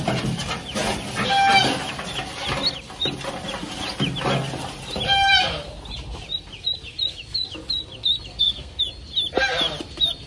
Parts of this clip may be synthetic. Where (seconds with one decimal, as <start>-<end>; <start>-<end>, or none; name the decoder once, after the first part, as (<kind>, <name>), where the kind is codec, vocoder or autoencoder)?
8.3-8.8 (codec, SNAC)